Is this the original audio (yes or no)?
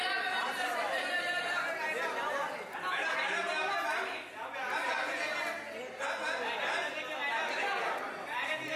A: yes